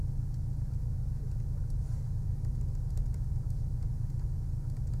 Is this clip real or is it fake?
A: real